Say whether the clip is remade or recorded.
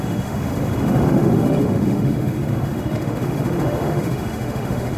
remade